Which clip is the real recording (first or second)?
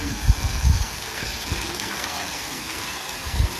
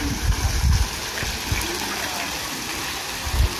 second